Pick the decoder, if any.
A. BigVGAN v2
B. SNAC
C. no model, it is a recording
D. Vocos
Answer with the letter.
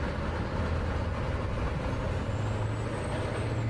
C